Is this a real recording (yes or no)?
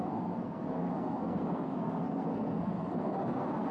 no